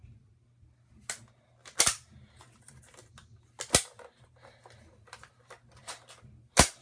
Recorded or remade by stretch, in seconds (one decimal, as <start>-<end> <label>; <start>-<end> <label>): 0.0-6.8 recorded